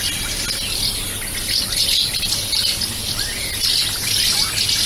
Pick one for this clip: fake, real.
real